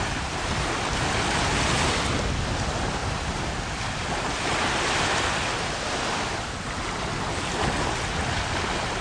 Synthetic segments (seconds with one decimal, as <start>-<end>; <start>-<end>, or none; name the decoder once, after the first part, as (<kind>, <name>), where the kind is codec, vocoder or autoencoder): none